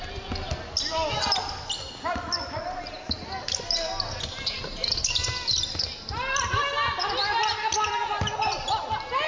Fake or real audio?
real